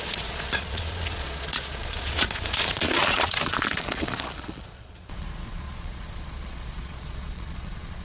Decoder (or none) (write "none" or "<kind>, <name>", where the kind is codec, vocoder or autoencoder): vocoder, Vocos